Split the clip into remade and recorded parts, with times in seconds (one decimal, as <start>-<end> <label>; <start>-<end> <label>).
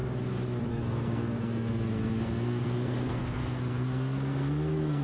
0.0-0.7 recorded; 0.7-5.0 remade